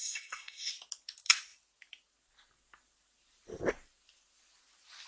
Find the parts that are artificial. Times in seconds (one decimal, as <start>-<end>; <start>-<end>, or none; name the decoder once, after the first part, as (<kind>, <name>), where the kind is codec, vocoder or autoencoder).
0.0-0.7 (codec, SNAC)